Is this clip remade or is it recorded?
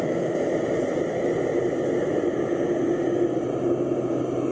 recorded